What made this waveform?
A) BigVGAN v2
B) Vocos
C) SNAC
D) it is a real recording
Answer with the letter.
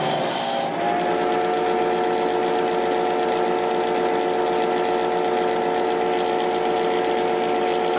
D